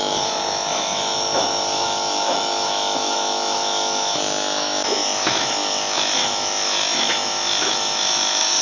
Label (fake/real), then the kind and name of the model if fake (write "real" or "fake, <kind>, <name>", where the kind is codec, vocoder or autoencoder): fake, autoencoder, DAC-VAE